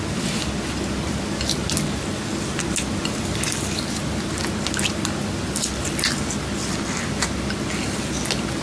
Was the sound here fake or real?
real